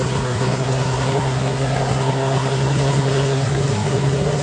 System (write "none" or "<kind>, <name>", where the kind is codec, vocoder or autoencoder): codec, SNAC